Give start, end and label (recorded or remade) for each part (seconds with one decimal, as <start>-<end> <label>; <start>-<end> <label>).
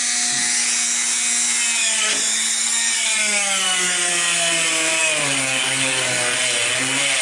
0.0-1.8 recorded; 1.8-4.1 remade; 4.1-5.0 recorded; 5.0-6.4 remade; 6.4-7.2 recorded